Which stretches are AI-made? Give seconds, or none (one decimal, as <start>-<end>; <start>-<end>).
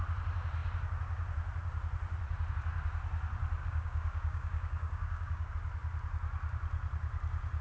3.6-5.5